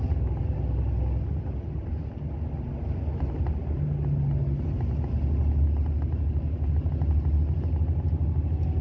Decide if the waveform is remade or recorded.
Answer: recorded